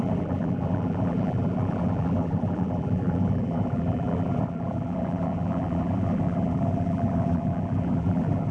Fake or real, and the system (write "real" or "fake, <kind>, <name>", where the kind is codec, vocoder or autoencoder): fake, vocoder, BigVGAN v2